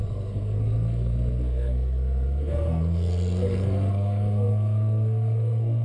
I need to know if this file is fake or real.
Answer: fake